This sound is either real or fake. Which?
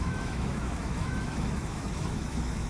fake